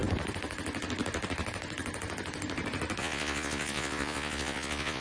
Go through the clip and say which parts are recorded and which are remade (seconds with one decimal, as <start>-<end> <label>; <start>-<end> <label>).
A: 0.0-3.0 recorded; 3.0-5.0 remade